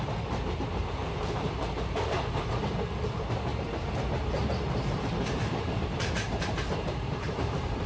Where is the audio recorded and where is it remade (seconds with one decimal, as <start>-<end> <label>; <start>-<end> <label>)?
0.0-0.8 recorded; 0.8-2.6 remade; 2.6-3.5 recorded; 3.5-7.9 remade